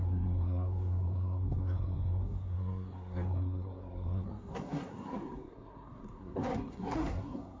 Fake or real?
fake